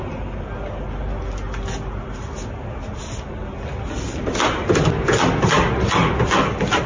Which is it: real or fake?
real